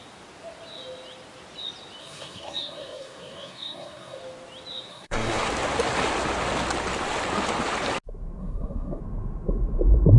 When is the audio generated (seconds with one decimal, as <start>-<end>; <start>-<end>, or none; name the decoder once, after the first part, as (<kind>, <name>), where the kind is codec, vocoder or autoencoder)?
2.0-4.2 (codec, SNAC); 4.9-5.5; 8.4-9.0